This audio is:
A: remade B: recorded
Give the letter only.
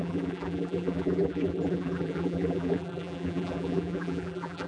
A